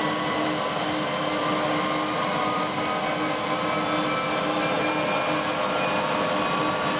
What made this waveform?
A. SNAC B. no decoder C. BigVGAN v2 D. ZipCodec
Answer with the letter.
B